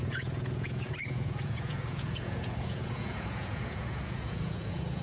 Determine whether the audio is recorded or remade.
remade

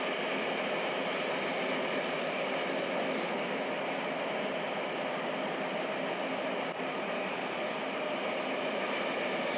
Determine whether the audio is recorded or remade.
recorded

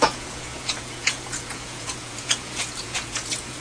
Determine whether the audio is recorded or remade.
remade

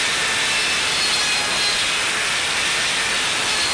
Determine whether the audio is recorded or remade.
recorded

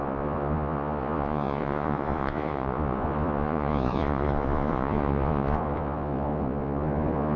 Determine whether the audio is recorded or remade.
remade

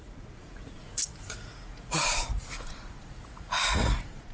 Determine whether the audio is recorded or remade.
remade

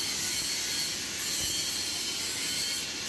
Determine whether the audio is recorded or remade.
recorded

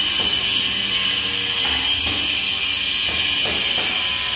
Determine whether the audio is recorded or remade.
recorded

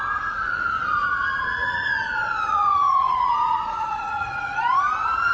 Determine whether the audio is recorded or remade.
remade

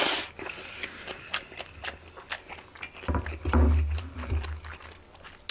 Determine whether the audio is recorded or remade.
recorded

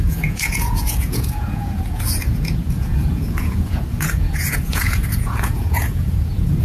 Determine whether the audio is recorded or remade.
remade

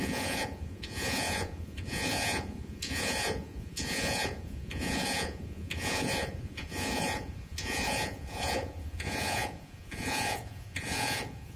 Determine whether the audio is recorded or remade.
remade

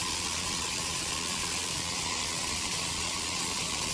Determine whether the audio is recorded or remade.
remade